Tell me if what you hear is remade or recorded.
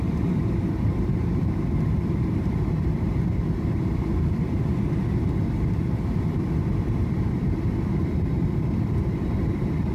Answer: recorded